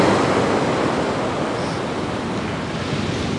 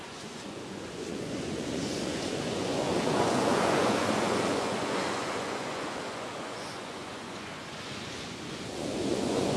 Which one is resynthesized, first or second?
second